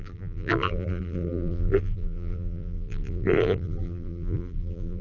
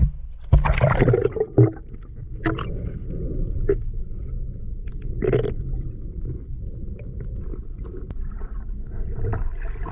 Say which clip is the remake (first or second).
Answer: first